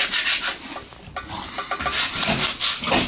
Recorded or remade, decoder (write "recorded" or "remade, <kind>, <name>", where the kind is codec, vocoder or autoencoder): recorded